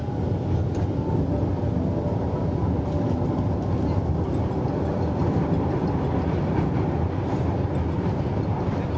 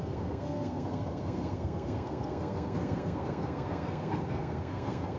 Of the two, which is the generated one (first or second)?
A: second